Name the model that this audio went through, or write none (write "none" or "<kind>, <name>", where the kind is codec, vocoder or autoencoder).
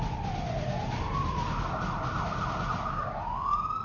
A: none